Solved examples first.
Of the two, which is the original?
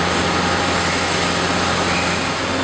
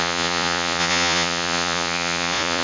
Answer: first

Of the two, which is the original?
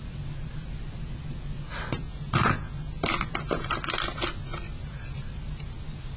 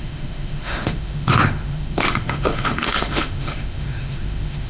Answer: first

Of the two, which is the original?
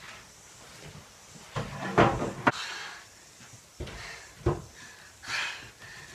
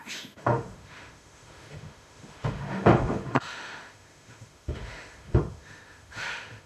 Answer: first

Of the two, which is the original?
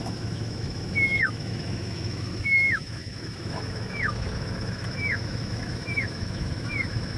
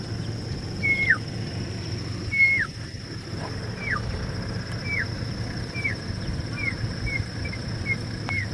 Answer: second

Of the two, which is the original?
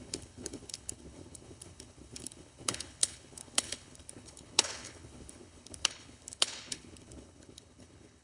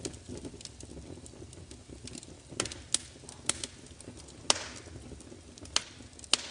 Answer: second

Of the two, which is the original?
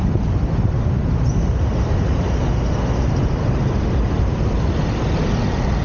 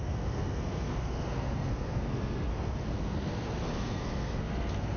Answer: first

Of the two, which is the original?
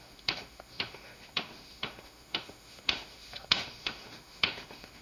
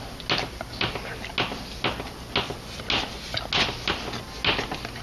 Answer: second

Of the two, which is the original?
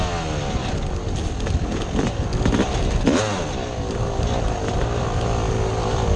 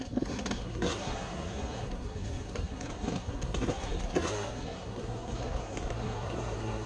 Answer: first